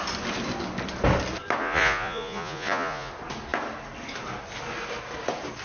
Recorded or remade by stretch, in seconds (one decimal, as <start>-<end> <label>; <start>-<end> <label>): 0.0-1.6 recorded; 1.6-3.1 remade; 3.1-5.6 recorded